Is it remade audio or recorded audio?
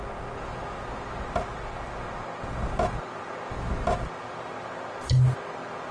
recorded